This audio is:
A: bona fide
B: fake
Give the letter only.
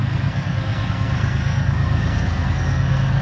B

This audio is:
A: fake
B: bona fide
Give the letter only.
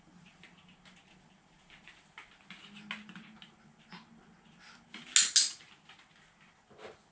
B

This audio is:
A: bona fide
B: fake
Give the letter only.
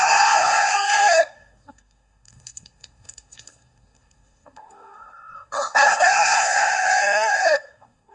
B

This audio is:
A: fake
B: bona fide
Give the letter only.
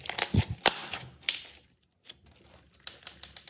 B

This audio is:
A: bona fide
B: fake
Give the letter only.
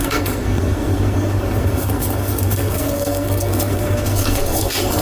B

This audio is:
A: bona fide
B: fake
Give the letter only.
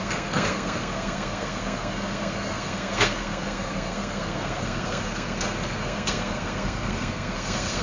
B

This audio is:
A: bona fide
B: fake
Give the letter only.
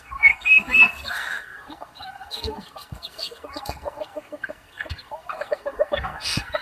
B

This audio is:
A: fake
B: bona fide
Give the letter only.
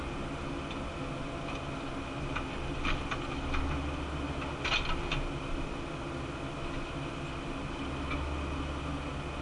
B